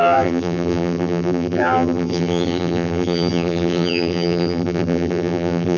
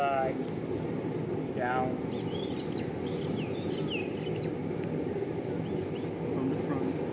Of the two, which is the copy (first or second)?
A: first